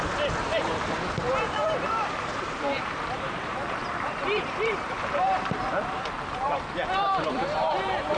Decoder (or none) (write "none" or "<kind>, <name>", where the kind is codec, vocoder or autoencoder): vocoder, BigVGAN v2